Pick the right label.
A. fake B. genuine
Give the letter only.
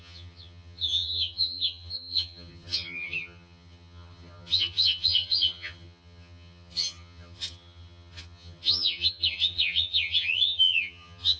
A